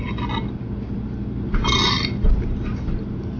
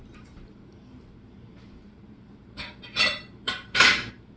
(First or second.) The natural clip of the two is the first